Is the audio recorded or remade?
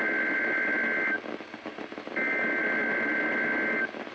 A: recorded